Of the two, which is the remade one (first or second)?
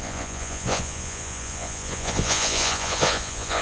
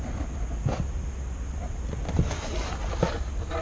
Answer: first